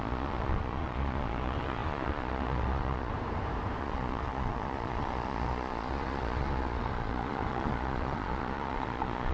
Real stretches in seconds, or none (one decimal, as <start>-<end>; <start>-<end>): 3.1-3.8